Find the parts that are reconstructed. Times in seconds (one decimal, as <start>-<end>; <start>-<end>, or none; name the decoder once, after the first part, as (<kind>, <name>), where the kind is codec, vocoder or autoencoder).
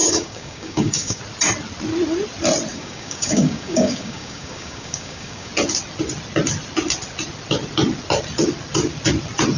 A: 0.0-1.2 (codec, DAC); 2.7-5.5